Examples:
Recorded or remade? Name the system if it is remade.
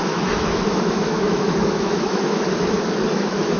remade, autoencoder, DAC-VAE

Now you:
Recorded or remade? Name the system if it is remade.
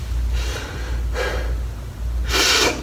recorded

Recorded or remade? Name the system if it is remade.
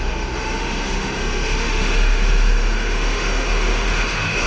remade, autoencoder, DAC-VAE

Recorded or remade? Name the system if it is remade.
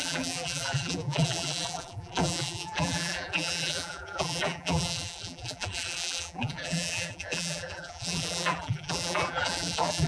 remade, vocoder, BigVGAN v2